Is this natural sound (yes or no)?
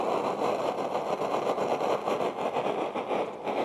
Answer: yes